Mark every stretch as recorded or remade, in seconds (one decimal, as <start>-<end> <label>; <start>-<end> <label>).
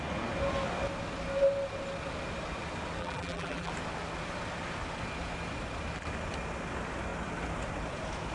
0.0-3.0 recorded; 3.0-3.7 remade; 3.7-8.3 recorded